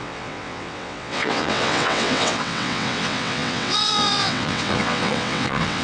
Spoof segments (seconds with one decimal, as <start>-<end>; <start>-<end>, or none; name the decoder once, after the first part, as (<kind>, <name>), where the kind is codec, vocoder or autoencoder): 0.0-5.8 (vocoder, WaveNeXt)